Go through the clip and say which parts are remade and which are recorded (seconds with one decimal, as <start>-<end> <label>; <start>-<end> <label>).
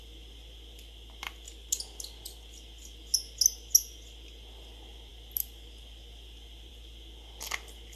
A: 0.0-8.0 recorded